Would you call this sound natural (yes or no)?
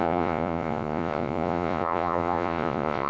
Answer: no